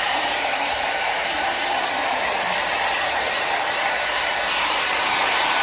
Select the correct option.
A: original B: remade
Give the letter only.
B